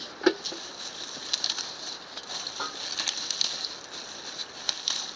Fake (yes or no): no